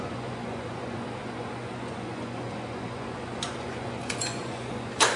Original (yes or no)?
no